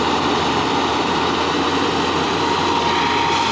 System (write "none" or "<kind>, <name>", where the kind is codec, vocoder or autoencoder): vocoder, BigVGAN v2